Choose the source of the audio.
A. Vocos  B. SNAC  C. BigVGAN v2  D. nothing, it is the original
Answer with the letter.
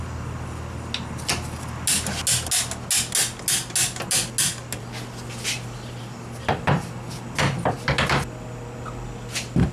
D